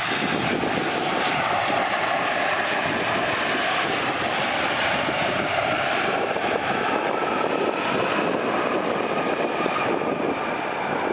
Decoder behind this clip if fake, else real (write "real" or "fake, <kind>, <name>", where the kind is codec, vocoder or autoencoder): fake, vocoder, BigVGAN v2